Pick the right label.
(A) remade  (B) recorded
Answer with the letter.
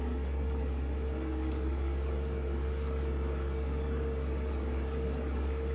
A